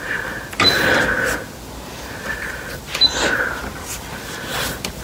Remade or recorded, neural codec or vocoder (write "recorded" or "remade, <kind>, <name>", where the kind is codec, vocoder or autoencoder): recorded